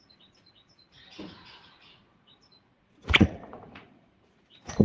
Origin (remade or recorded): remade